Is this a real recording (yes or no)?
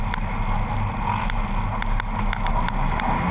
yes